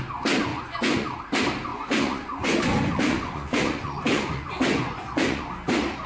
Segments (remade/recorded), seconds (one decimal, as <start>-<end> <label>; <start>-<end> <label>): 0.0-0.5 recorded; 0.5-1.2 remade; 1.2-1.7 recorded; 1.7-5.4 remade; 5.4-6.1 recorded

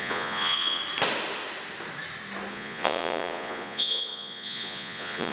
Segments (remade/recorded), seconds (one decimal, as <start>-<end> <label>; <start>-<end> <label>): 0.0-0.8 remade; 0.8-2.5 recorded; 2.5-5.3 remade